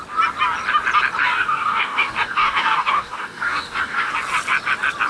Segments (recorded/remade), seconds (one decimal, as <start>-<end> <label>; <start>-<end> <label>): 0.0-1.2 recorded; 1.2-4.1 remade; 4.1-5.1 recorded